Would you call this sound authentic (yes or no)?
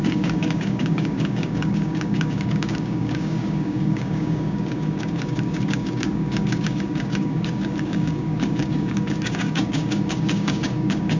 no